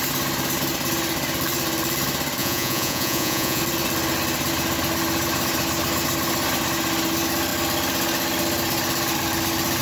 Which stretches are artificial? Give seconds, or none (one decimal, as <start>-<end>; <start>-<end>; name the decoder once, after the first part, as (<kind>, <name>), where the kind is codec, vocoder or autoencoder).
2.4-3.6 (vocoder, Vocos)